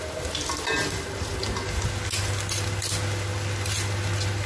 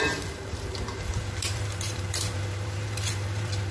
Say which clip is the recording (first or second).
first